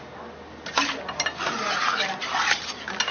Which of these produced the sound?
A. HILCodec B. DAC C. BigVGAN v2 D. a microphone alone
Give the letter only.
D